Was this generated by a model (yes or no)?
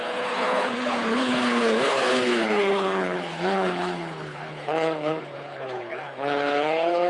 yes